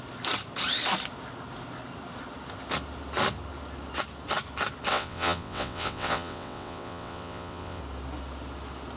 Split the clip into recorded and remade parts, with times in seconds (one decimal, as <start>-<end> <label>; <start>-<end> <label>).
0.0-4.9 recorded; 4.9-7.8 remade; 7.8-9.0 recorded